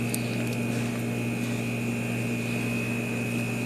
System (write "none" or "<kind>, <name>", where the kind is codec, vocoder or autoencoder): none